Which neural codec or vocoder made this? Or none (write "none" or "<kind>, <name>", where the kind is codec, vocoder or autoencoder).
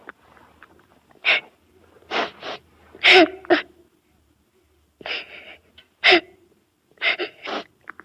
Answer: none